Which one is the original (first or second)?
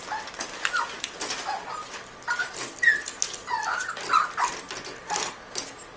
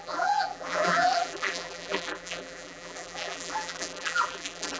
first